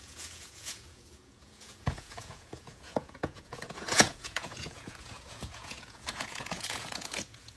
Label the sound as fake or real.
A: fake